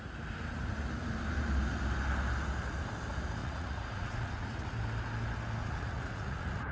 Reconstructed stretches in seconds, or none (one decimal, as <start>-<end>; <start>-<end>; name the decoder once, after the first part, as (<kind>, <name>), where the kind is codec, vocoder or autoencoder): 3.4-4.7 (vocoder, Vocos); 5.6-6.7